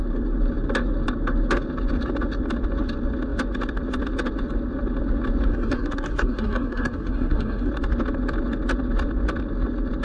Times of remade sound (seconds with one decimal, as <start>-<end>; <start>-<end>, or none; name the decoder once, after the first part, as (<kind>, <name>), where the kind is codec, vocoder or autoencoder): 5.5-7.7 (codec, SNAC)